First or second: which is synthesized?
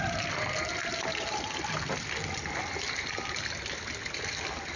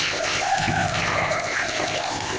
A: second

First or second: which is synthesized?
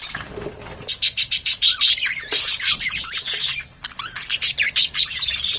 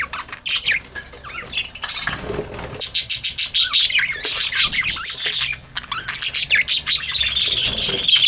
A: first